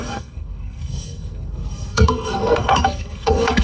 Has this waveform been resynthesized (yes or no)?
yes